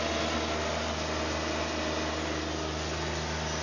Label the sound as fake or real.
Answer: real